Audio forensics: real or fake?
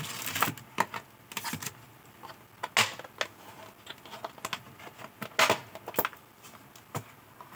real